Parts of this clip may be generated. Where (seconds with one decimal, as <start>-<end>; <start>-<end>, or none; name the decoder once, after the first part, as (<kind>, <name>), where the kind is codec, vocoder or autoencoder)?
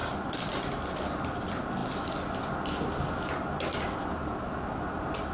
0.0-0.5 (vocoder, BigVGAN v2)